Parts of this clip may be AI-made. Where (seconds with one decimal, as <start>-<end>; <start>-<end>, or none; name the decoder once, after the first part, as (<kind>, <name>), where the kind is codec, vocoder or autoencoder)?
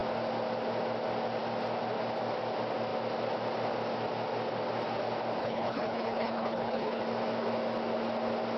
5.4-7.0 (codec, HILCodec)